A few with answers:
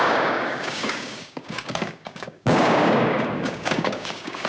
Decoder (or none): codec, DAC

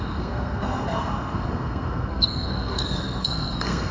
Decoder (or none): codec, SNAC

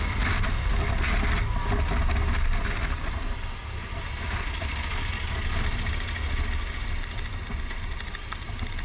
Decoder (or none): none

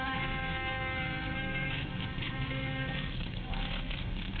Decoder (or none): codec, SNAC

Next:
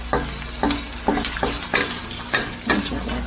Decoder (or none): none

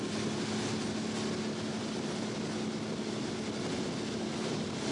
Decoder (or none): none